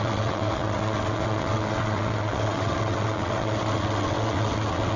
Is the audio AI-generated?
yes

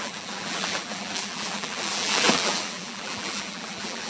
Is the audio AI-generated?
yes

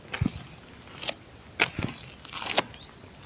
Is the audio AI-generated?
no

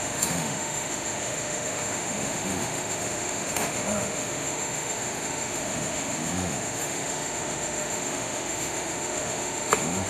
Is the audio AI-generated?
yes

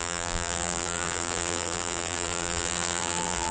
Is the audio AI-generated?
yes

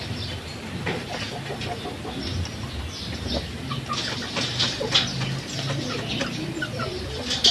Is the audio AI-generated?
no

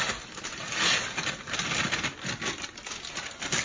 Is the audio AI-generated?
no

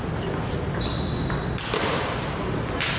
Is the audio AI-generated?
no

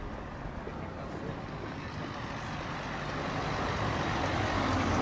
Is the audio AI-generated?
no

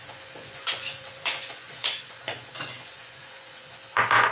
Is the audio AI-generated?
yes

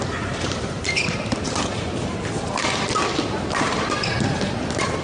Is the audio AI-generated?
yes